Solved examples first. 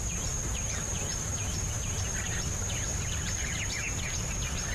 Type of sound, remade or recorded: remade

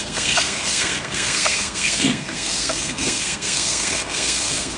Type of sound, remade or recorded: remade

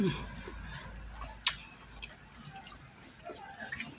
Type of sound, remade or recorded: recorded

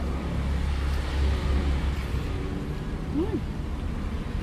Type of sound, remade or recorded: recorded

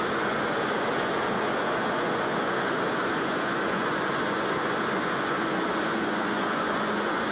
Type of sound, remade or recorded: remade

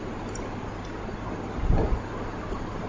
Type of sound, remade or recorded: recorded